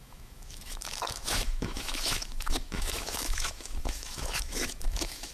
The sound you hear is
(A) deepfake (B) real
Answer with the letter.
A